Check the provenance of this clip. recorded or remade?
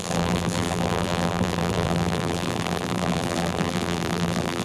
remade